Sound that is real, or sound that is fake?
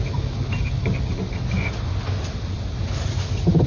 real